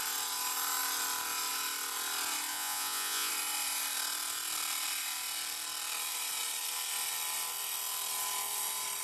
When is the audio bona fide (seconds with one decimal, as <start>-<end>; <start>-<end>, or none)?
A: 0.0-2.5; 3.3-9.0